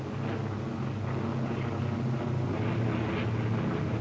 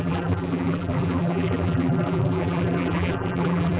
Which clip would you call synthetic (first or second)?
second